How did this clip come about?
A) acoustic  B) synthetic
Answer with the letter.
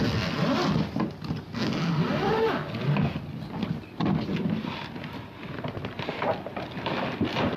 A